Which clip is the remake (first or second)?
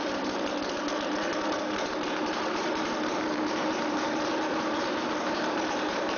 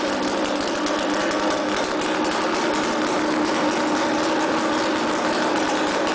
first